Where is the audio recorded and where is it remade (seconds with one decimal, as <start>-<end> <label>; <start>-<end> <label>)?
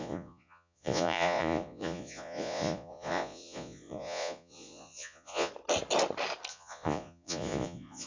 0.0-5.5 remade; 5.5-6.5 recorded; 6.5-8.1 remade